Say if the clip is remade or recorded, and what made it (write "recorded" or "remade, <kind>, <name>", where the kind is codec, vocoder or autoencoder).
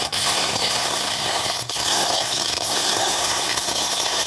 remade, codec, SNAC